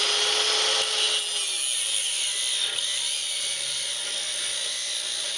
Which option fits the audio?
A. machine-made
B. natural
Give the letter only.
B